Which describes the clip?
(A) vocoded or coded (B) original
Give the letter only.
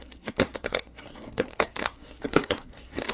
A